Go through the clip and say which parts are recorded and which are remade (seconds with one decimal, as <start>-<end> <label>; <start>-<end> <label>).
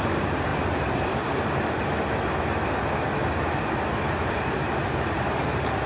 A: 0.0-0.5 remade; 0.5-4.0 recorded; 4.0-5.9 remade